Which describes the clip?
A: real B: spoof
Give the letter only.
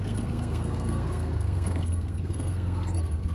B